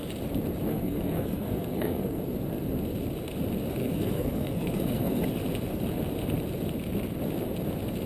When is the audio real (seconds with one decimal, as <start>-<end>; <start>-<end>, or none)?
0.0-0.7; 2.2-3.8; 5.2-8.1